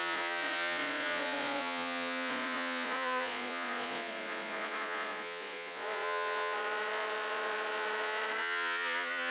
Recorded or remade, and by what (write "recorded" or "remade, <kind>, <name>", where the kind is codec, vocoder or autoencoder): remade, vocoder, Vocos